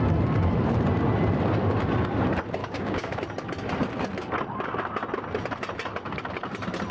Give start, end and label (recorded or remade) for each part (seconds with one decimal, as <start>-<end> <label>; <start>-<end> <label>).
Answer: 0.0-2.6 recorded; 2.6-3.2 remade; 3.2-6.9 recorded